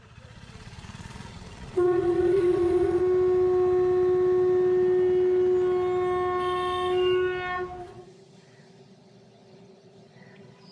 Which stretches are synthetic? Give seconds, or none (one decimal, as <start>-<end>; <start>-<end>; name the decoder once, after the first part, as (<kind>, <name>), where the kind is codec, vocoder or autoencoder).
0.0-3.0 (vocoder, Vocos); 7.8-10.7